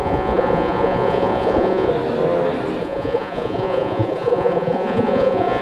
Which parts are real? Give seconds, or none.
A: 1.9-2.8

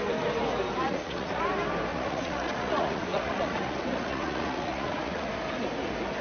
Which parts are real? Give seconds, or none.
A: 0.0-0.8; 1.4-1.9; 5.3-6.2